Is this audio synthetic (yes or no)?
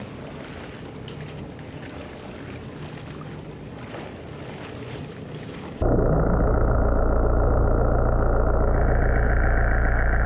no